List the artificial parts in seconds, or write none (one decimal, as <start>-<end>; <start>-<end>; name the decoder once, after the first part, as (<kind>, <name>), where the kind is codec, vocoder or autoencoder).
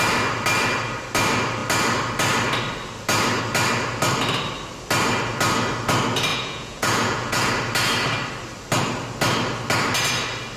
6.3-7.5 (vocoder, Vocos)